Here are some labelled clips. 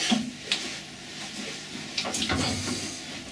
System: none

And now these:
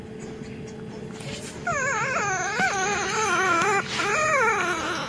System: none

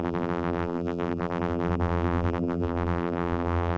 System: vocoder, BigVGAN v2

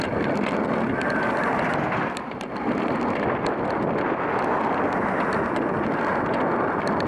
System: none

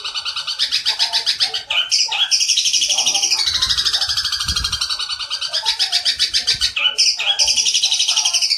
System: vocoder, BigVGAN v2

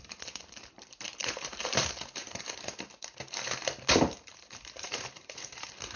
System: vocoder, BigVGAN v2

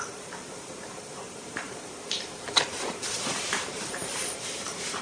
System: vocoder, BigVGAN v2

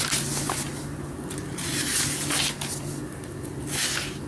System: none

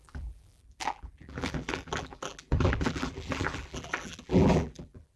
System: vocoder, BigVGAN v2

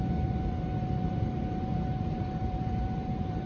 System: vocoder, BigVGAN v2